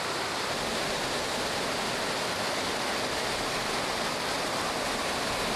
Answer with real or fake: real